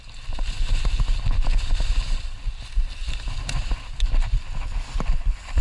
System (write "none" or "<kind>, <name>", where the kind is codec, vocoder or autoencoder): none